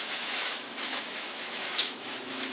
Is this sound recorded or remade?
remade